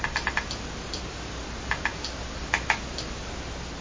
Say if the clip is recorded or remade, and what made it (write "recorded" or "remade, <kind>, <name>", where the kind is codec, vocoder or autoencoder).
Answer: recorded